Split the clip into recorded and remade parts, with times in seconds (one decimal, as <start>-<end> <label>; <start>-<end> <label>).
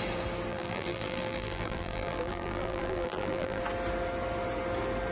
0.0-0.5 recorded; 0.5-3.6 remade; 3.6-5.1 recorded